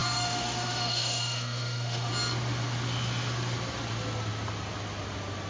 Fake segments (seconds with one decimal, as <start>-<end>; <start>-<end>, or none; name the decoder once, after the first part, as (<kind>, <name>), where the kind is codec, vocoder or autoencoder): 0.0-2.1 (autoencoder, DAC-VAE)